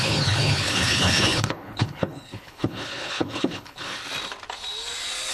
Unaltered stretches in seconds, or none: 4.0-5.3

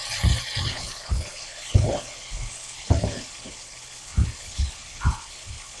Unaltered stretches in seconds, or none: 0.0-0.7

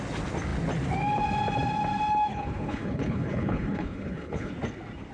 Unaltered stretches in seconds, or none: 0.0-2.3; 4.5-5.1

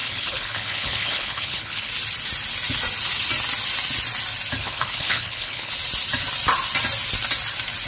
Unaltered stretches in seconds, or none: 1.9-4.6; 5.7-7.9

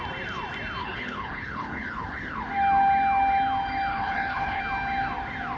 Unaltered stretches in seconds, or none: 0.0-0.8; 2.4-3.9; 4.6-5.6

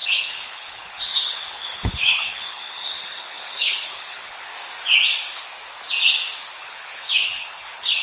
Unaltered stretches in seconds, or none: 4.5-6.6

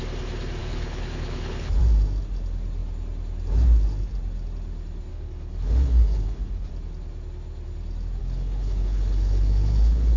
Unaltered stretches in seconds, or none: 0.0-0.6; 1.8-5.1; 6.7-8.2

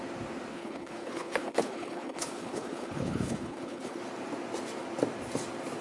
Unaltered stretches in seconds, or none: 0.0-0.5; 4.0-5.8